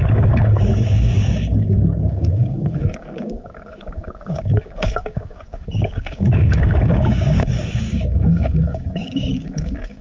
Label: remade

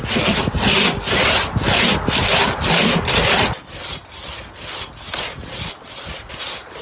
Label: recorded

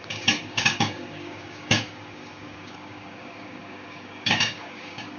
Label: remade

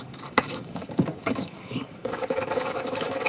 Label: remade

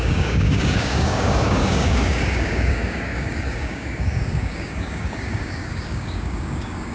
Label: remade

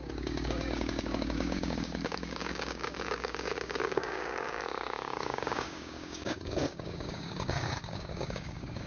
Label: remade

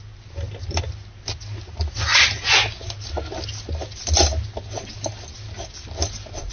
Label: recorded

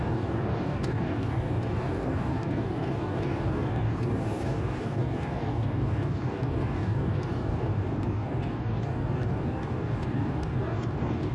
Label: remade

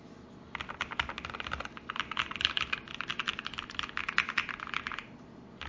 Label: recorded